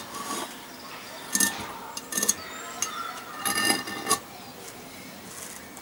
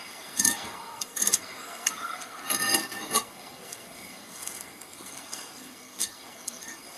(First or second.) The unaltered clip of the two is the first